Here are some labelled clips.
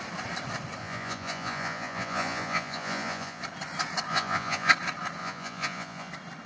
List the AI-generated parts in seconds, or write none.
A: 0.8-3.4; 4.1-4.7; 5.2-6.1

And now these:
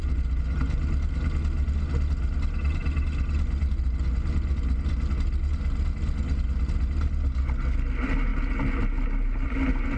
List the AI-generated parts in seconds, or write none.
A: none

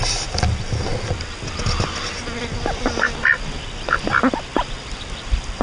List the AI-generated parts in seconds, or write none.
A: none

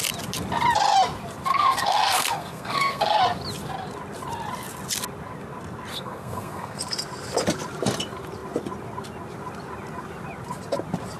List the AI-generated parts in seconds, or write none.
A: 1.5-3.2; 5.9-6.8

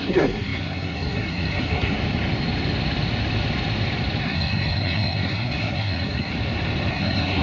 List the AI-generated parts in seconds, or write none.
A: 0.0-2.0; 4.2-6.3; 6.9-7.4